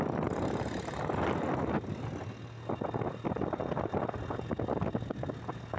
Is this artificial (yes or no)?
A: no